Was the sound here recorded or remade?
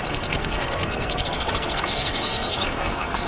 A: remade